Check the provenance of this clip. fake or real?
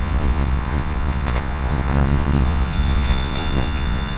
fake